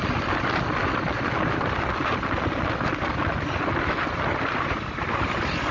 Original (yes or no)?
yes